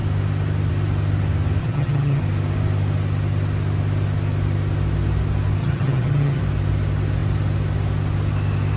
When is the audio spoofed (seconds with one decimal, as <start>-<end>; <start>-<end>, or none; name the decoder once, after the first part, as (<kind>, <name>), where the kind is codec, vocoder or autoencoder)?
1.6-2.2 (vocoder, HiFi-GAN); 5.6-6.4